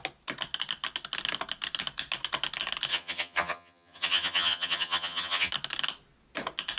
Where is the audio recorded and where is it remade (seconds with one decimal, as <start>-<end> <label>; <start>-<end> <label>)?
0.0-2.9 recorded; 2.9-5.5 remade; 5.5-6.8 recorded

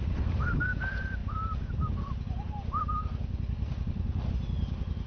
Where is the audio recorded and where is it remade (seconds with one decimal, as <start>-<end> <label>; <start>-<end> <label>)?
0.0-5.1 recorded

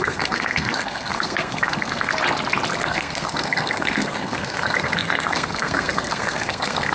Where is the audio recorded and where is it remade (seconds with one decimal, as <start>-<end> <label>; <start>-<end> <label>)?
0.0-2.1 remade; 2.1-2.8 recorded; 2.8-6.9 remade

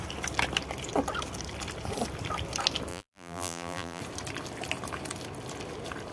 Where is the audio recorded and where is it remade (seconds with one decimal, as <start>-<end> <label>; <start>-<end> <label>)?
0.0-2.9 recorded; 2.9-4.0 remade; 4.0-6.1 recorded

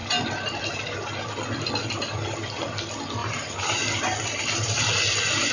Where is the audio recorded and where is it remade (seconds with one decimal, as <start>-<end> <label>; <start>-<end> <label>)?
0.0-3.2 recorded; 3.2-4.0 remade; 4.0-5.5 recorded

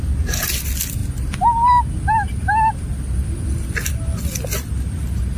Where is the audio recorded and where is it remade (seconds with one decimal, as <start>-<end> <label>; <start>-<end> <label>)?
0.0-5.4 recorded